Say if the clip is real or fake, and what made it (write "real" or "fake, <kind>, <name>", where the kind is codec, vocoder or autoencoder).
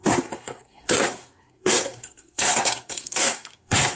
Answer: fake, codec, SNAC